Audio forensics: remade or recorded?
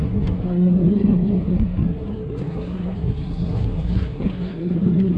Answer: remade